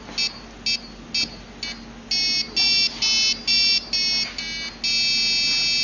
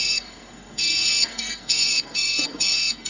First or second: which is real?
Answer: first